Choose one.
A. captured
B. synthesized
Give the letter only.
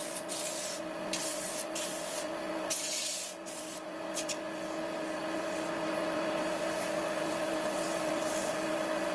A